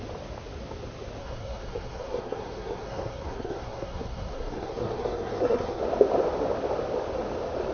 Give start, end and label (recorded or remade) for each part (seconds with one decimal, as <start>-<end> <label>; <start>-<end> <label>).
0.0-1.2 recorded; 1.2-5.8 remade; 5.8-7.7 recorded